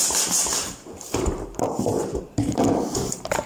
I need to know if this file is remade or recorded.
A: remade